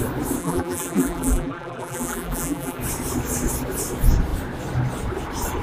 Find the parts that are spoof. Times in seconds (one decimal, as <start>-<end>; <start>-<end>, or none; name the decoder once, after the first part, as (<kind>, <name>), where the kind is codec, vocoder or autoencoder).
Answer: 0.4-2.8 (vocoder, BigVGAN v2)